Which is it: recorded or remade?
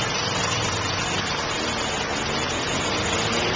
recorded